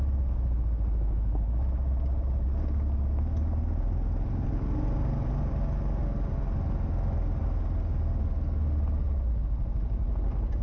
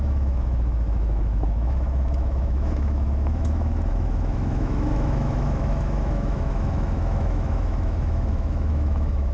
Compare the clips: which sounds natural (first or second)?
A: first